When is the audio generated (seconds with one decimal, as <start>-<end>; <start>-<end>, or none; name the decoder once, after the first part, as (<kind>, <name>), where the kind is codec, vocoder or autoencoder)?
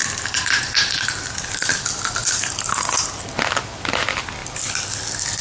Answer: 0.0-1.2 (vocoder, BigVGAN v2); 2.2-3.0